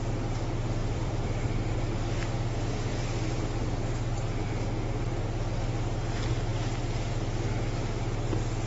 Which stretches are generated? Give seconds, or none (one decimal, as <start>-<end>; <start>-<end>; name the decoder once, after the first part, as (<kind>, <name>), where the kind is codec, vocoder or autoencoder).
0.8-1.4 (vocoder, BigVGAN v2)